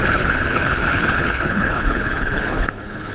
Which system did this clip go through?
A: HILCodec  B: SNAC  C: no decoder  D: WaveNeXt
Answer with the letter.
A